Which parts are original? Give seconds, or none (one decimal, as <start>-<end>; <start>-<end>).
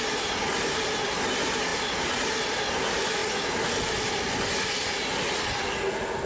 0.0-6.3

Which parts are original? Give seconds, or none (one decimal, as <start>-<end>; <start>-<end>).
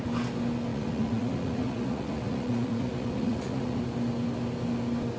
0.0-0.7; 3.8-5.2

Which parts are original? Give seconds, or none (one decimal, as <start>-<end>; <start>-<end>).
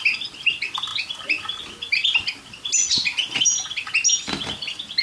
0.0-5.0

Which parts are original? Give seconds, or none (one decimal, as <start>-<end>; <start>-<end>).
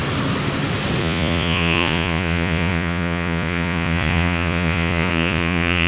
0.0-1.0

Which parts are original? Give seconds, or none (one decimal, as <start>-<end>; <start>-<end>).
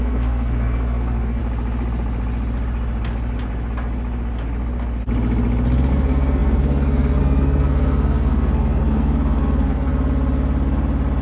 1.4-5.9; 9.9-11.2